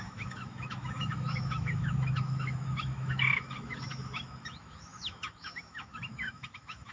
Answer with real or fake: fake